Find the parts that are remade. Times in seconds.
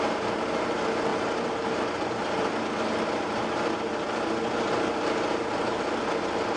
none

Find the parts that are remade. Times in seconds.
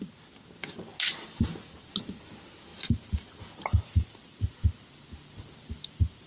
none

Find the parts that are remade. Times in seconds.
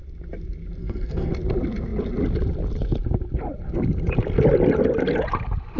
0.8-1.3 (codec, SNAC)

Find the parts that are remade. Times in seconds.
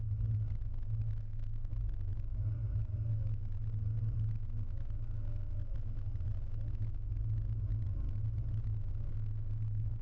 1.2-1.7 (codec, SNAC); 9.1-10.0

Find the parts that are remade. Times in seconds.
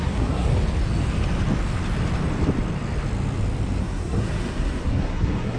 0.0-0.5 (codec, SNAC); 3.8-5.6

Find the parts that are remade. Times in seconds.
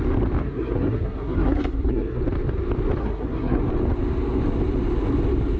0.4-2.2 (codec, SNAC); 3.0-3.6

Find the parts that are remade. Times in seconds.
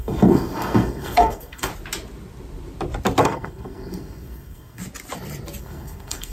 0.0-1.7 (codec, SNAC); 3.2-4.8; 5.6-6.3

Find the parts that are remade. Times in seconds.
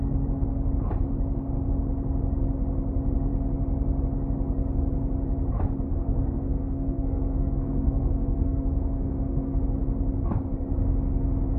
5.9-9.6 (codec, SNAC)